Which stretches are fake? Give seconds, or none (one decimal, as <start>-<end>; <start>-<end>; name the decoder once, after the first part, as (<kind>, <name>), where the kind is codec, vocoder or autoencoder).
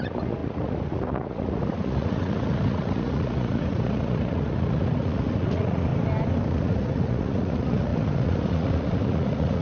0.0-5.9 (vocoder, Vocos); 6.5-9.6